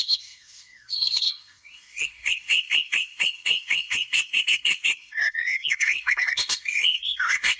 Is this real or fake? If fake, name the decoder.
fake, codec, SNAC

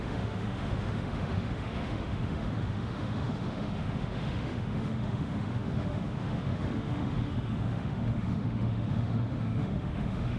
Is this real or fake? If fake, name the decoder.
fake, autoencoder, DAC-VAE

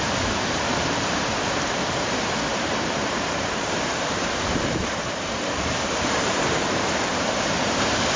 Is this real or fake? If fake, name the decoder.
fake, vocoder, BigVGAN v2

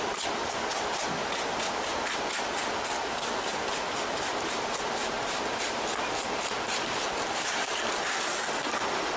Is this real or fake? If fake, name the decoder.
real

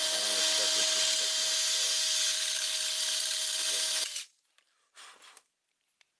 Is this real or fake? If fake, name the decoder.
real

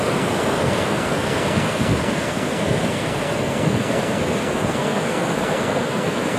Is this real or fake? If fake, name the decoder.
fake, codec, SNAC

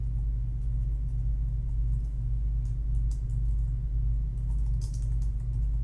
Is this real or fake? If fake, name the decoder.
real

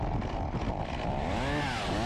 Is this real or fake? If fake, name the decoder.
real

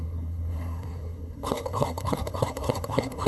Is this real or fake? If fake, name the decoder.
fake, codec, SNAC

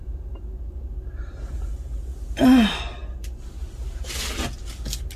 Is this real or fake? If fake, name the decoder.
real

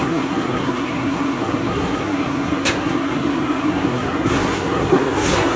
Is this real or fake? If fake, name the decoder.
fake, codec, SNAC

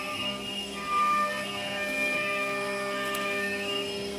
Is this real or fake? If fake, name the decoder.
fake, codec, SNAC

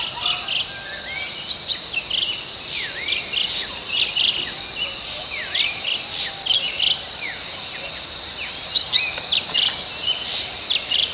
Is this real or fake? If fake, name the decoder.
real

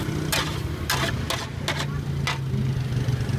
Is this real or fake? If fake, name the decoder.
real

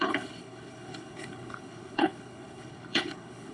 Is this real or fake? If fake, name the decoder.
fake, codec, HILCodec